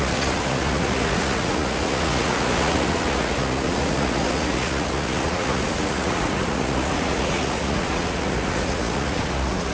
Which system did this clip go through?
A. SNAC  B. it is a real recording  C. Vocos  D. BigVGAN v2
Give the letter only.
C